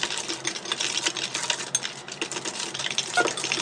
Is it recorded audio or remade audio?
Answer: recorded